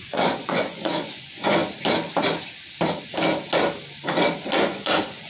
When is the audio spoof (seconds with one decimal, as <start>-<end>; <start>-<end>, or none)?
0.0-1.6; 4.5-5.3